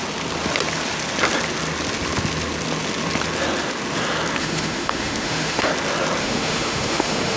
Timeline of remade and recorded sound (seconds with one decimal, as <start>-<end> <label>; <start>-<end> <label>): 0.0-4.4 recorded; 4.4-5.7 remade; 5.7-6.2 recorded; 6.2-7.4 remade